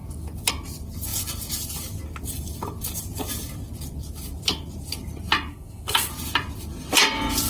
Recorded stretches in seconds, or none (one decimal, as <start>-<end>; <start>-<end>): 0.0-5.5; 6.1-7.5